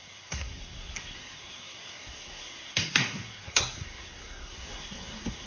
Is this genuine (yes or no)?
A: no